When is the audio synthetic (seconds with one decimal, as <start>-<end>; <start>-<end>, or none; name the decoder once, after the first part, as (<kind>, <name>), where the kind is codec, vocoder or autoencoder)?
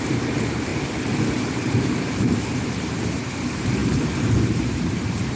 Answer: 0.0-0.7 (vocoder, BigVGAN v2); 1.3-5.4